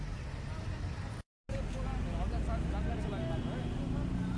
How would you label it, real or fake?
real